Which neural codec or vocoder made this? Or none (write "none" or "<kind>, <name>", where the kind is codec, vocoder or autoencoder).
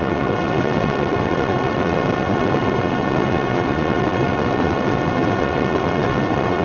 vocoder, WaveNeXt